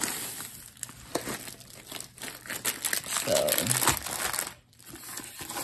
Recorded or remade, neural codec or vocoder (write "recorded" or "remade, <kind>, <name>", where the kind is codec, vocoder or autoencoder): recorded